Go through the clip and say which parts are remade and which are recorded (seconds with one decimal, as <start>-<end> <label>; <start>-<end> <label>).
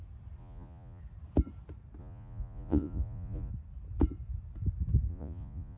0.0-0.4 recorded; 0.4-1.0 remade; 1.0-2.0 recorded; 2.0-3.5 remade; 3.5-5.1 recorded; 5.1-5.8 remade